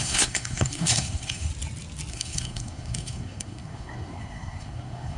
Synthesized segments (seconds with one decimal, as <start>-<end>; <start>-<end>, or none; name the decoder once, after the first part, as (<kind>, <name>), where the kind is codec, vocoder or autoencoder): 0.0-1.5 (codec, SNAC); 2.1-5.2